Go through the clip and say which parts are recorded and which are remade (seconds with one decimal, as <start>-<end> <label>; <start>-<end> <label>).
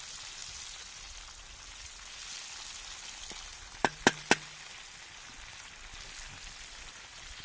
0.0-7.4 recorded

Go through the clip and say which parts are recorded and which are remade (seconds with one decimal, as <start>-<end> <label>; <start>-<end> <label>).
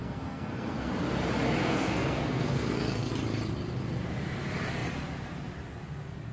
0.0-0.9 remade; 0.9-1.6 recorded; 1.6-3.1 remade; 3.1-6.3 recorded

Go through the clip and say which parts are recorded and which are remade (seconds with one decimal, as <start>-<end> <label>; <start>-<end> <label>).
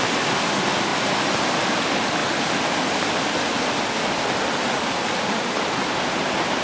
0.0-6.6 recorded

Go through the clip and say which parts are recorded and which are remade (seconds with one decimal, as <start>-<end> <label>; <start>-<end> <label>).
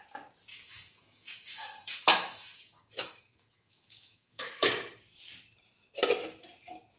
0.0-0.5 recorded; 0.5-4.7 remade; 4.7-7.0 recorded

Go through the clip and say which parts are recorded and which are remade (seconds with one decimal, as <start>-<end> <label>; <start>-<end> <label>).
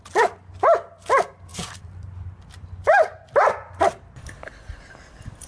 0.0-1.5 recorded; 1.5-4.8 remade; 4.8-5.5 recorded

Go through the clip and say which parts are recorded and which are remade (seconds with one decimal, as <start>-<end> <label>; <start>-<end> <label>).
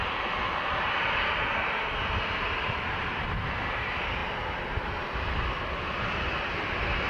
0.0-7.1 recorded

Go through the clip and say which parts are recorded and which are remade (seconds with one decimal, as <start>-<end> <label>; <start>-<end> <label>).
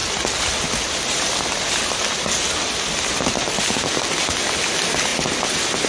0.0-5.9 recorded